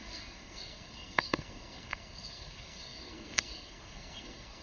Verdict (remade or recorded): remade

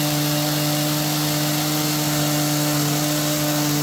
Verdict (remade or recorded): recorded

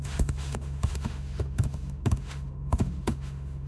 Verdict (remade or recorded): remade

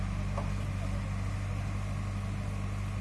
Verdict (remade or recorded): recorded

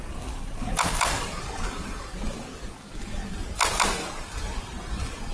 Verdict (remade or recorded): recorded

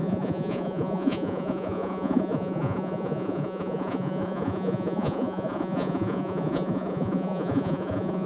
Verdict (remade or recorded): remade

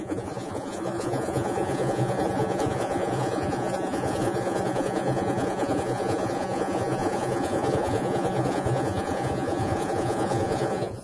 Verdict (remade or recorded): remade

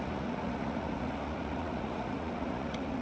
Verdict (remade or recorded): remade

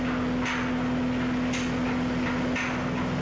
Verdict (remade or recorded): recorded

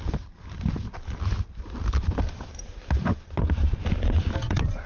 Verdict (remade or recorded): recorded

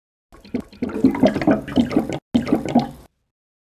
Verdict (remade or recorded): recorded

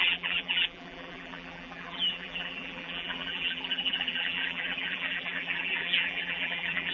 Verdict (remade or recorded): remade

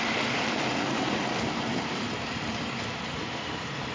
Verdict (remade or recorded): remade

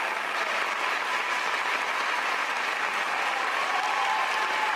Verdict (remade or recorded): recorded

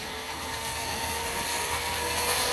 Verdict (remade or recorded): remade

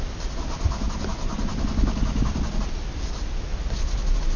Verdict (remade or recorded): recorded